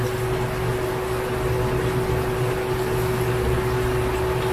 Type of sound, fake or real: real